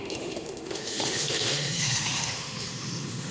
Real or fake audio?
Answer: fake